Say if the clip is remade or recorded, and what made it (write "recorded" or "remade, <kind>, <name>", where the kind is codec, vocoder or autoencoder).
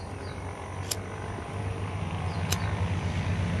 recorded